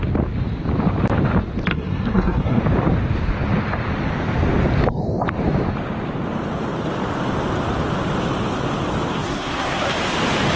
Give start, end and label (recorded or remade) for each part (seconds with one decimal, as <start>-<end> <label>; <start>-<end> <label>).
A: 0.0-1.7 recorded; 1.7-2.6 remade; 2.6-9.2 recorded; 9.2-9.9 remade; 9.9-10.6 recorded